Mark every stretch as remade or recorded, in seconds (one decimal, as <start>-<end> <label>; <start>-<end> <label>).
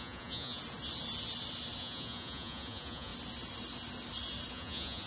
0.0-0.6 remade; 0.6-1.8 recorded; 1.8-3.1 remade; 3.1-4.5 recorded; 4.5-5.1 remade